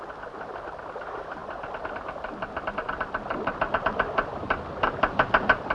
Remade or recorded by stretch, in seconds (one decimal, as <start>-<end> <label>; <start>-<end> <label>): 0.0-5.7 remade